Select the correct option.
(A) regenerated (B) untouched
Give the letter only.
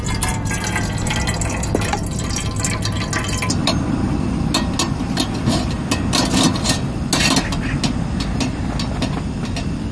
B